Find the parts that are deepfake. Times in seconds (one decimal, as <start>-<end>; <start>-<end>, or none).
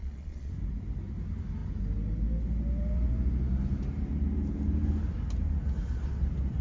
0.0-0.5